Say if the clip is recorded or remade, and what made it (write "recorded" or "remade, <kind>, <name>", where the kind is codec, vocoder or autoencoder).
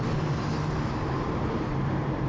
recorded